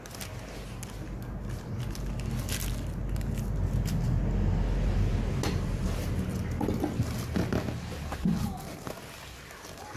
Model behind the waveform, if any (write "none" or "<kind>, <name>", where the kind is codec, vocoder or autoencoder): none